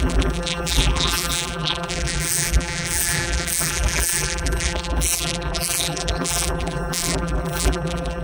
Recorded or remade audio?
remade